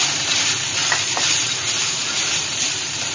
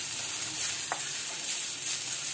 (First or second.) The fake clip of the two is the first